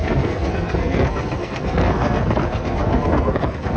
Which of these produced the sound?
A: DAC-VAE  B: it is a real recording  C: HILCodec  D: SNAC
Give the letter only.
D